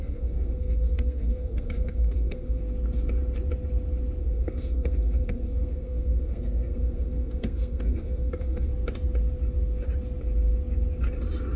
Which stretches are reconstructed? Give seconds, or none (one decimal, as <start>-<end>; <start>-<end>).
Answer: 0.0-2.6; 4.2-8.7